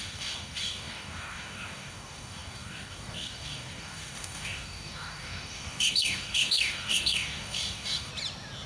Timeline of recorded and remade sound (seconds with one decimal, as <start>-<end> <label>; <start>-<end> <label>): 0.0-8.1 remade; 8.1-8.7 recorded